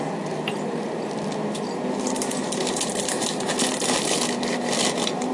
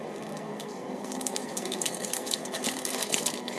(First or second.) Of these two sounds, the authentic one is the first